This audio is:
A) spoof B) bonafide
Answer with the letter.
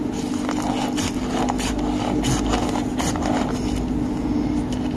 B